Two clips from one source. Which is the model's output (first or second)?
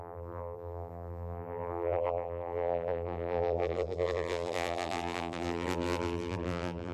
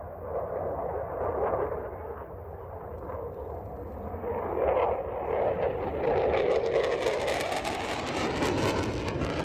first